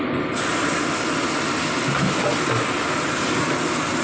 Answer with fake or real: real